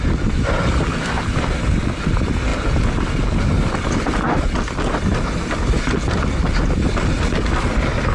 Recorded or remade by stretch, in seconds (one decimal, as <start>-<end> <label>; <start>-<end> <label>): 0.0-8.1 recorded